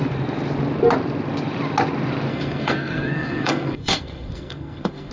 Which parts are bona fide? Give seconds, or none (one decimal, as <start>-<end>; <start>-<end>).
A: 0.0-2.3